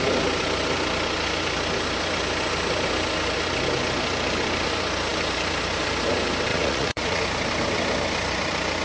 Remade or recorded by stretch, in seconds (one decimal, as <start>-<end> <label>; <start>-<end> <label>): 0.0-6.5 recorded; 6.5-7.2 remade; 7.2-8.8 recorded

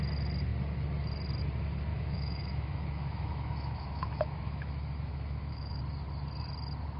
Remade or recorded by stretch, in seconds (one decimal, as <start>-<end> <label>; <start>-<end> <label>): 0.0-1.9 recorded; 1.9-5.8 remade; 5.8-7.0 recorded

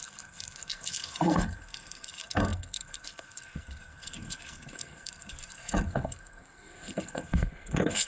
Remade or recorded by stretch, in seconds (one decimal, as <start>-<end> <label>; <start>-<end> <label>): 0.0-8.1 remade

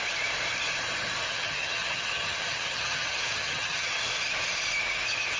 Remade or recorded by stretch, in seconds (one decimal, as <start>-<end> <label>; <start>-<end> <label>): 0.0-1.3 recorded; 1.3-4.0 remade; 4.0-5.4 recorded

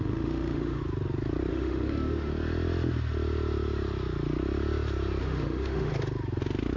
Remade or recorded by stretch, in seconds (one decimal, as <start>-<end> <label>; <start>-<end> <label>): 0.0-0.8 remade; 0.8-1.5 recorded; 1.5-2.3 remade; 2.3-5.2 recorded; 5.2-5.9 remade; 5.9-6.8 recorded